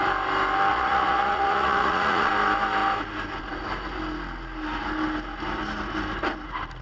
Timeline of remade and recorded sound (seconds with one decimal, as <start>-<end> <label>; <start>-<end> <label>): 0.0-0.7 recorded; 0.7-2.3 remade; 2.3-6.8 recorded